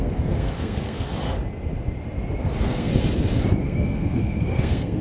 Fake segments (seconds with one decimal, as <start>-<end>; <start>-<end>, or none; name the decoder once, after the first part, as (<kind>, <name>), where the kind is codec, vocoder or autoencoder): 0.0-1.1 (codec, SNAC); 2.4-2.9; 3.6-5.0